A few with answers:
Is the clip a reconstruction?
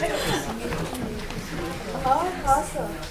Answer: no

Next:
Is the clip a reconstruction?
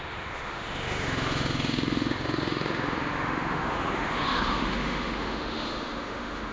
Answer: yes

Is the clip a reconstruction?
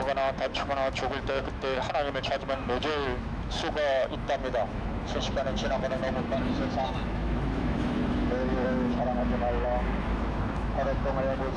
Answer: yes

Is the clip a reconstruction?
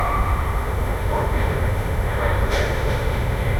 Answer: yes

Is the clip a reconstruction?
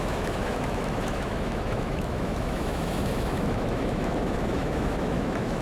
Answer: yes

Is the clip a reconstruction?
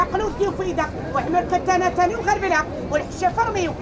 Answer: no